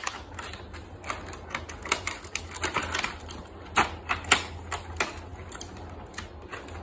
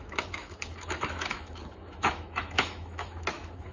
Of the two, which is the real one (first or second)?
first